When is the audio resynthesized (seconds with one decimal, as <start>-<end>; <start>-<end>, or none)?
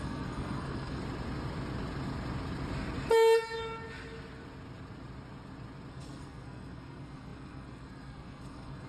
0.0-1.0; 5.9-8.9